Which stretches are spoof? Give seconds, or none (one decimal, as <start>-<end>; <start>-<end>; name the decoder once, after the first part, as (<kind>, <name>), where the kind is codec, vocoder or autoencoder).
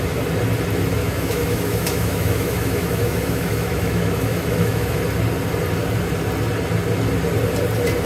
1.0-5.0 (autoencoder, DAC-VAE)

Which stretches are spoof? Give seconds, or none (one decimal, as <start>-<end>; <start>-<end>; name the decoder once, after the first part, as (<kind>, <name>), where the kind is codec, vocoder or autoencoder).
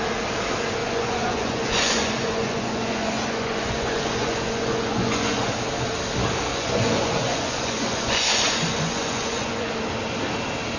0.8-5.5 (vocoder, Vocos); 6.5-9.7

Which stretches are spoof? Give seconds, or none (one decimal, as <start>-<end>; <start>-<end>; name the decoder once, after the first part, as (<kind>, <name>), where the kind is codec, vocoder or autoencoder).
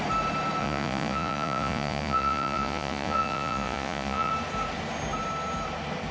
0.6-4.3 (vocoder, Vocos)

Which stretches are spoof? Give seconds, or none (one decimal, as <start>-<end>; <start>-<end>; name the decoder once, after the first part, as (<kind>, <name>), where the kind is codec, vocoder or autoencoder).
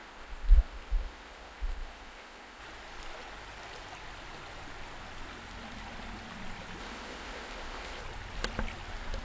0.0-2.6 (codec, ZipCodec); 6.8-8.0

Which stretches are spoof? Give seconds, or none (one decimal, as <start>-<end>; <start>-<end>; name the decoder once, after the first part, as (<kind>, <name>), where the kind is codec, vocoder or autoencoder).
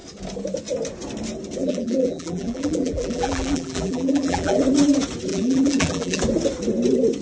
1.6-4.6 (vocoder, BigVGAN v2); 5.3-6.2